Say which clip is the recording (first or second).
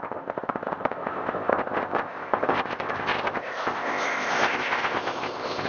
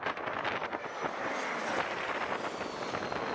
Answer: second